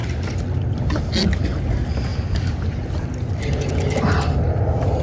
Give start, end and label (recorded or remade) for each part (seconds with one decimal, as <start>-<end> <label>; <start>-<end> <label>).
0.0-2.1 recorded; 2.1-3.1 remade; 3.1-5.0 recorded